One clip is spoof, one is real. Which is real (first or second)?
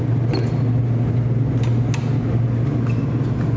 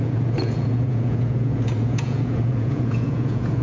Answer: first